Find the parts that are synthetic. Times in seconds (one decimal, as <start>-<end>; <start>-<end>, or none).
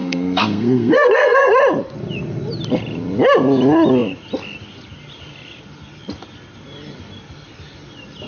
0.0-1.5